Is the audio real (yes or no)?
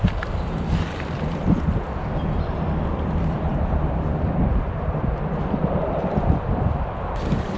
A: no